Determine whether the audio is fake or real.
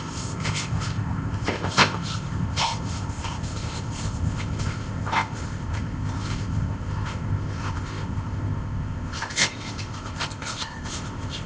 fake